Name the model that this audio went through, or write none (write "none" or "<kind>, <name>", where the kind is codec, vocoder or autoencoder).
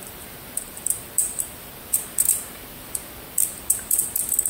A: vocoder, BigVGAN v2